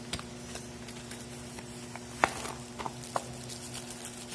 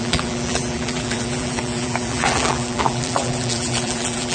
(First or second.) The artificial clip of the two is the second